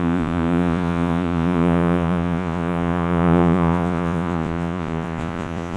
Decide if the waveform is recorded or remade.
remade